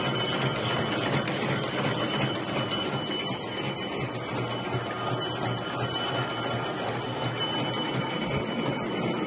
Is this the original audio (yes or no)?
yes